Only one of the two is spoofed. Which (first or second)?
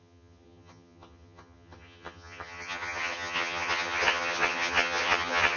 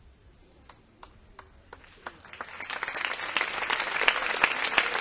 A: first